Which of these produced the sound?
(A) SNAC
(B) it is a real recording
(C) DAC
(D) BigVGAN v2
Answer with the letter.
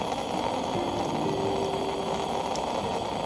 B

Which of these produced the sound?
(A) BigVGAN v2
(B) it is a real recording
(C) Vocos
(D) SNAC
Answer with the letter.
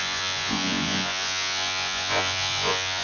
C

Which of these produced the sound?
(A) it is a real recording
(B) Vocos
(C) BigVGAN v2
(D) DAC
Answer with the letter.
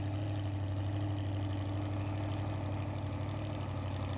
A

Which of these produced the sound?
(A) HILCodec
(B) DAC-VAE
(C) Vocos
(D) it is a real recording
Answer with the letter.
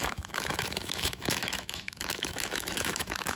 B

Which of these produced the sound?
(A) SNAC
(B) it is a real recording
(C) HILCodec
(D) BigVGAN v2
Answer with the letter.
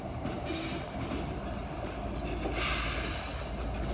B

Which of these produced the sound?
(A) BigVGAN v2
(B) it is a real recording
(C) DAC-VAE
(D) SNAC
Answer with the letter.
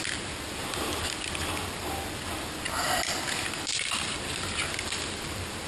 B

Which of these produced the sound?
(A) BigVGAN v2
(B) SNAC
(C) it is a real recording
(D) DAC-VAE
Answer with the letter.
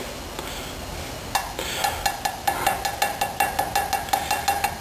C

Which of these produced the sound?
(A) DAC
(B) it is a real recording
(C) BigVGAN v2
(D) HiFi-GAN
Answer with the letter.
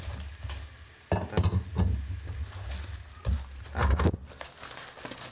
B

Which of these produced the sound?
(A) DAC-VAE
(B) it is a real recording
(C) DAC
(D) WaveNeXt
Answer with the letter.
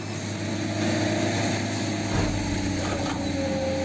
B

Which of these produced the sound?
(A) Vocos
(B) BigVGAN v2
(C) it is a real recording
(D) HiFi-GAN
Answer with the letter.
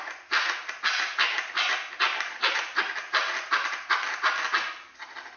C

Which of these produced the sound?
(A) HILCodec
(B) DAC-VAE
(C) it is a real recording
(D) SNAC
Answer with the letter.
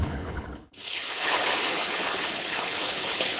A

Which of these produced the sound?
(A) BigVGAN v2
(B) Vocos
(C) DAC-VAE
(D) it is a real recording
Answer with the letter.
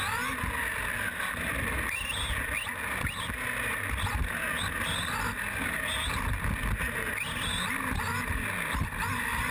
D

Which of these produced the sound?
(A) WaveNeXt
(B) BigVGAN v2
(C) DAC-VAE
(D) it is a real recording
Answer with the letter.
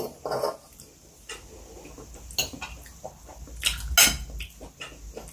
D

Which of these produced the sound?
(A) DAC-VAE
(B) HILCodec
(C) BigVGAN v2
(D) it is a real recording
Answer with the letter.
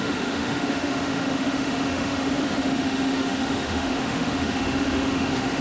A